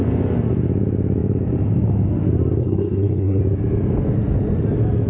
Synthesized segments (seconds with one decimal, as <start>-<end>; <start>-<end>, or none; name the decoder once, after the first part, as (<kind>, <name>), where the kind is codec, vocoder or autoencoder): 2.6-3.4 (codec, SNAC)